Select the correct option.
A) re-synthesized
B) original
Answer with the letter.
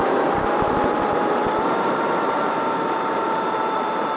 A